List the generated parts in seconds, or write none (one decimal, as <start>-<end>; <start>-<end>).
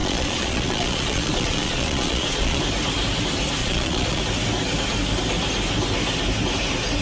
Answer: 0.0-2.6; 3.6-4.2